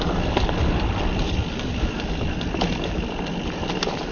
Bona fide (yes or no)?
yes